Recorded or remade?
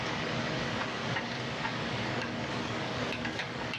remade